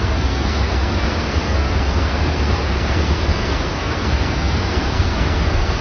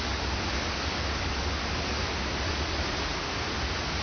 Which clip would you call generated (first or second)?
first